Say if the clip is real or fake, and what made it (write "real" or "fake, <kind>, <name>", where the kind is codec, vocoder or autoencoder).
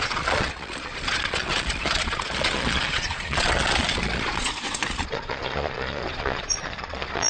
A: fake, vocoder, Vocos